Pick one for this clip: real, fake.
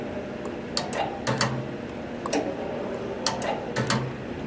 real